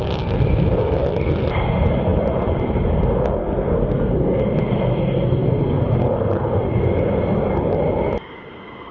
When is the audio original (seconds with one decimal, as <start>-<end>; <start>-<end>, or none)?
0.0-3.4; 4.4-8.9